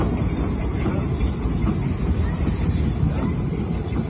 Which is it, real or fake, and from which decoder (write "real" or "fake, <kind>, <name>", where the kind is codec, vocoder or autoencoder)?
fake, vocoder, BigVGAN v2